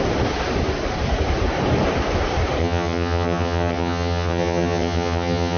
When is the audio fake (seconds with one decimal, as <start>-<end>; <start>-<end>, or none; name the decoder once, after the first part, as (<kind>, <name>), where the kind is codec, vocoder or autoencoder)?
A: 2.6-5.6 (vocoder, HiFi-GAN)